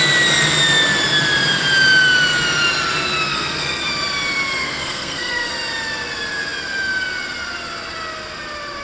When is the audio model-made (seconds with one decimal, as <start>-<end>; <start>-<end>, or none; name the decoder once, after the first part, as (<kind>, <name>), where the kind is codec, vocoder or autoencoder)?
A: 3.3-3.8 (codec, SNAC); 4.6-5.5